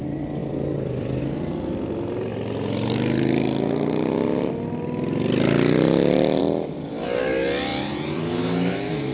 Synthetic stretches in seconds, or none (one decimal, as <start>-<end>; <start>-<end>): 0.4-1.2; 7.7-8.2